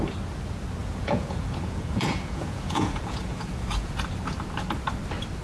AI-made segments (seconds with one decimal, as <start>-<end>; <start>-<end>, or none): 0.8-4.0